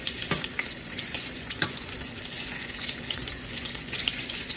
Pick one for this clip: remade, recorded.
remade